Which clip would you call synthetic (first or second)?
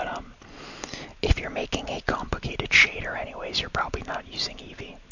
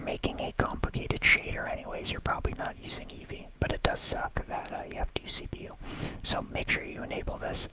second